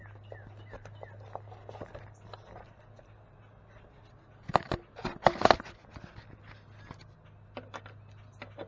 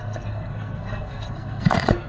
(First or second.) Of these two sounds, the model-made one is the second